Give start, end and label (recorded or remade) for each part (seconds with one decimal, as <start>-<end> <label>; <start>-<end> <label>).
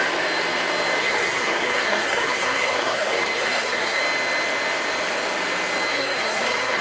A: 0.0-1.0 recorded; 1.0-4.0 remade; 4.0-5.9 recorded; 5.9-6.8 remade